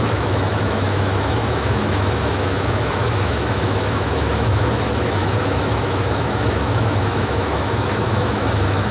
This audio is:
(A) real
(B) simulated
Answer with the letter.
B